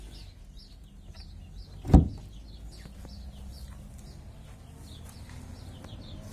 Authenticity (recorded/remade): recorded